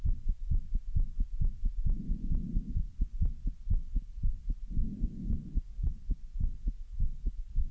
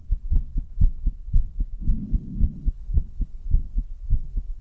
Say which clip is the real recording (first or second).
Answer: first